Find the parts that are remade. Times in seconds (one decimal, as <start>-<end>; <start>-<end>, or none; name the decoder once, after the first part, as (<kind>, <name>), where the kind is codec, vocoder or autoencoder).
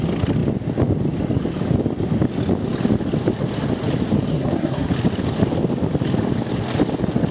4.3-4.9 (codec, SNAC)